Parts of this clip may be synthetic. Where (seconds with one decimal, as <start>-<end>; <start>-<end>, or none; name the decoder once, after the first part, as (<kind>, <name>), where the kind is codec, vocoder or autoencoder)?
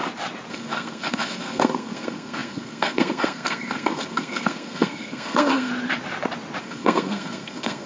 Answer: 0.5-5.7 (codec, SNAC); 6.6-7.9